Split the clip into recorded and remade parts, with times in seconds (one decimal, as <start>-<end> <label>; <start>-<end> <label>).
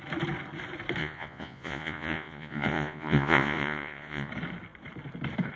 0.0-1.0 recorded; 1.0-4.3 remade; 4.3-5.6 recorded